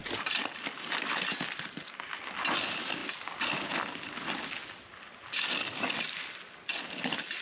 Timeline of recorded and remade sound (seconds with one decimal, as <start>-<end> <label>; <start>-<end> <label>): 0.0-1.7 remade; 1.7-7.4 recorded